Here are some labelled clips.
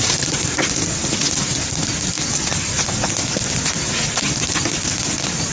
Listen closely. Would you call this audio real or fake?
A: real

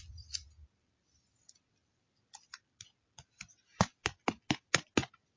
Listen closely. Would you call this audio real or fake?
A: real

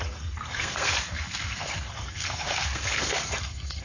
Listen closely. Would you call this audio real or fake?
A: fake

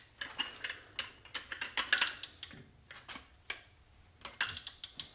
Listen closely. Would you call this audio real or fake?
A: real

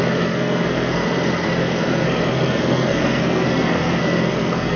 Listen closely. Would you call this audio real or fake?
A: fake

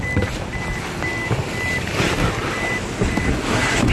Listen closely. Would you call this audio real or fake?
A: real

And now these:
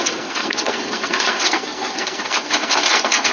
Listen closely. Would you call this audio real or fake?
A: fake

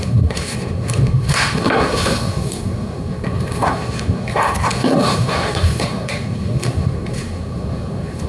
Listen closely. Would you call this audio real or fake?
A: fake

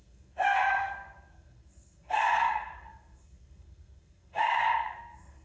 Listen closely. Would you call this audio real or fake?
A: fake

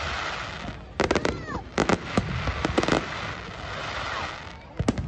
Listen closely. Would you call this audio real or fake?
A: real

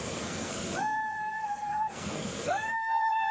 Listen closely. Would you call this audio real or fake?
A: fake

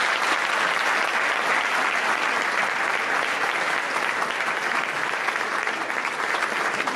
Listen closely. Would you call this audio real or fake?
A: real